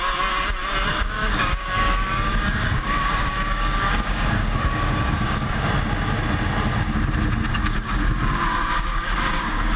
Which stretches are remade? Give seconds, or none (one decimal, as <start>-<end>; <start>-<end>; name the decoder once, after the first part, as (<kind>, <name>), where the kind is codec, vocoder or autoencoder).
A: 0.9-5.6 (codec, DAC); 7.5-9.8